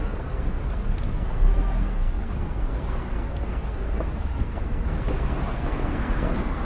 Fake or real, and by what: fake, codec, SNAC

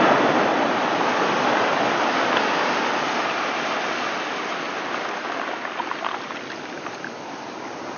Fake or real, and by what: real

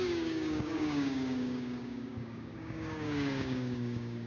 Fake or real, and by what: fake, codec, DAC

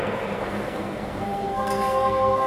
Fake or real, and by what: fake, codec, SNAC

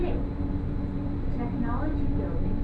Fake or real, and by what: real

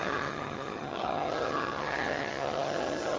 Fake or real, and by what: fake, vocoder, HiFi-GAN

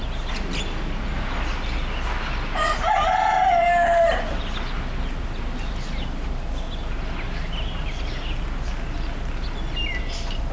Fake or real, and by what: real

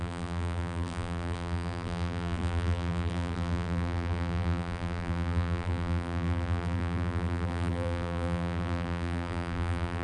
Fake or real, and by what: fake, vocoder, BigVGAN v2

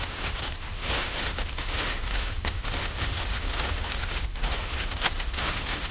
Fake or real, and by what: fake, autoencoder, DAC-VAE